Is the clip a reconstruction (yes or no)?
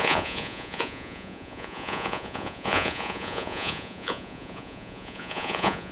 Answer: yes